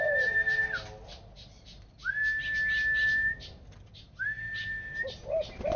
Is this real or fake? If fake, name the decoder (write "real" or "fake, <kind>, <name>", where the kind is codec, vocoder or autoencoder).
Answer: real